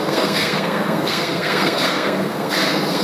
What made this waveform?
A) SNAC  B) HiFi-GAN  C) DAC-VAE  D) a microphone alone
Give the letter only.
A